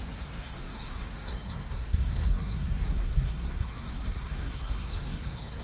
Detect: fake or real fake